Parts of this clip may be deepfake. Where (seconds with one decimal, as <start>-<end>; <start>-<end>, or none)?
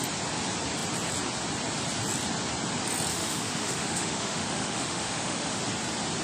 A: 3.1-5.6